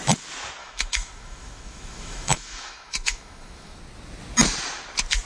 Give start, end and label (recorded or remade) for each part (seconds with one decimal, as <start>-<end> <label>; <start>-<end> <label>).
0.0-0.6 recorded; 0.6-3.8 remade; 3.8-5.3 recorded